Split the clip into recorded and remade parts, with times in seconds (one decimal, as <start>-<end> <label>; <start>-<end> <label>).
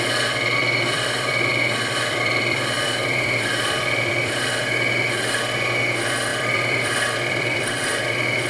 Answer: 0.0-0.6 recorded; 0.6-4.6 remade; 4.6-6.3 recorded; 6.3-8.5 remade